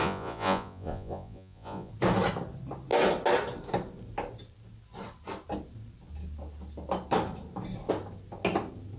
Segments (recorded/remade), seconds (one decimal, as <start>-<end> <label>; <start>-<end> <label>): 0.0-1.9 remade; 1.9-9.0 recorded